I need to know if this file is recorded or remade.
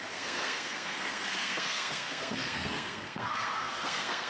remade